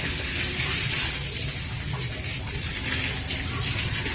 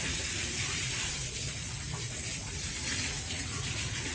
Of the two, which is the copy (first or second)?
second